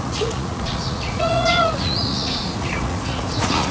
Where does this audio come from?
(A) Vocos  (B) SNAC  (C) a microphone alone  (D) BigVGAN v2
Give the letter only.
A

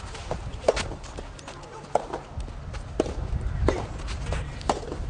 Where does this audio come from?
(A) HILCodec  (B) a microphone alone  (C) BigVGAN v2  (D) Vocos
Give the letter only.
B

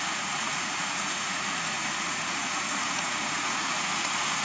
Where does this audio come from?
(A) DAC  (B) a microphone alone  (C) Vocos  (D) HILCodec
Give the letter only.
C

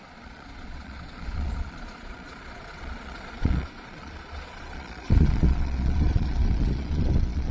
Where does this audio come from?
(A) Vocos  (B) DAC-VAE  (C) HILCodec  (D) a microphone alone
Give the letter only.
A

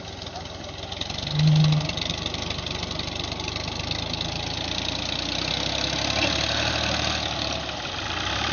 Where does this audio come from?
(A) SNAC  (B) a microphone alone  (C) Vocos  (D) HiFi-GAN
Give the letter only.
B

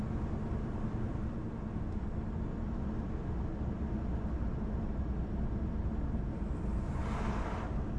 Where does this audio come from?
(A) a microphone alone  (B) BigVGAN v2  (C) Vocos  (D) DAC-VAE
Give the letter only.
A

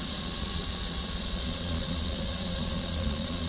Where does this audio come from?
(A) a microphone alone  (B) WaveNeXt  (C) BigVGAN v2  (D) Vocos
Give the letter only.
D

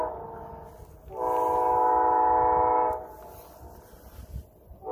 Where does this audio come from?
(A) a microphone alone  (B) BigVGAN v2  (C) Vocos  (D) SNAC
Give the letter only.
A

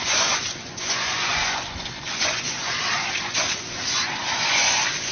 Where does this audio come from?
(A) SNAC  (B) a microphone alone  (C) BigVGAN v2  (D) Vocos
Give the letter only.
D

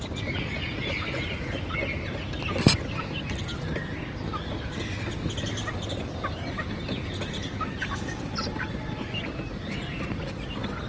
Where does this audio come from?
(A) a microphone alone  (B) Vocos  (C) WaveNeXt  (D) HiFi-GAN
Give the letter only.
A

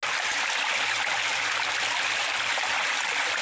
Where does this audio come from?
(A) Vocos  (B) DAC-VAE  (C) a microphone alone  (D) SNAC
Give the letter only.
C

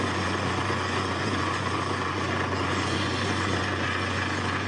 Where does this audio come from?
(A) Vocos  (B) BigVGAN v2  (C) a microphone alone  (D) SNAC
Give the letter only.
A